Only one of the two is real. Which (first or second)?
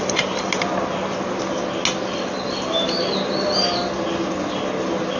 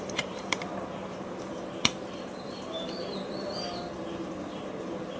first